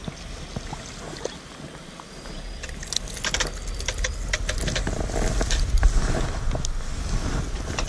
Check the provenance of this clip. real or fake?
real